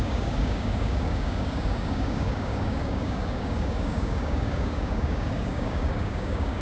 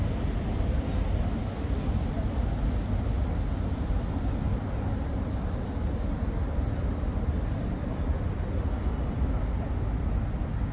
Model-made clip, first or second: first